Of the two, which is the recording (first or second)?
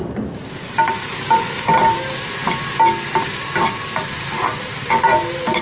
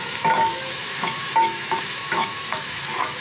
first